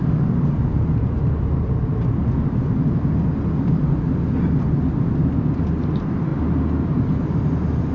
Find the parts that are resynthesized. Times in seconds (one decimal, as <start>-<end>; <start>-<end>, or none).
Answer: none